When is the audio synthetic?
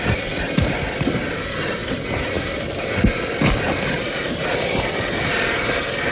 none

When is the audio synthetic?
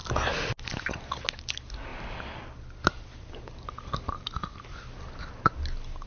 1.9-3.3 (vocoder, BigVGAN v2); 4.5-5.2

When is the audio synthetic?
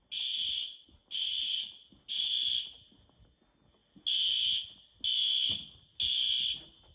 none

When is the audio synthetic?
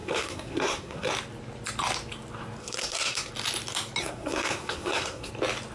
0.0-1.1 (codec, SNAC); 2.6-3.3; 4.0-5.3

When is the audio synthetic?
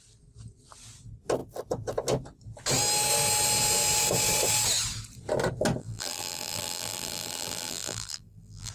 5.8-8.7 (vocoder, BigVGAN v2)